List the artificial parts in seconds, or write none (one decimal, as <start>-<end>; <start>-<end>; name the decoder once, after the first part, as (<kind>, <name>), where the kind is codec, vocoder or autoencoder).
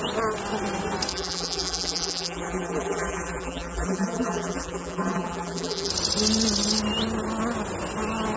1.1-5.9 (vocoder, BigVGAN v2)